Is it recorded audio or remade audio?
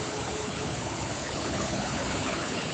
remade